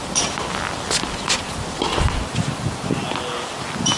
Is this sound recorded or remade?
recorded